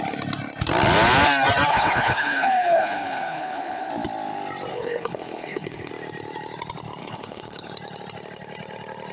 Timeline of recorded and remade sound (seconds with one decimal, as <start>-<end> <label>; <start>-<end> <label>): 0.0-1.7 recorded; 1.7-3.9 remade; 3.9-4.7 recorded; 4.7-5.9 remade; 5.9-7.0 recorded; 7.0-7.7 remade; 7.7-9.1 recorded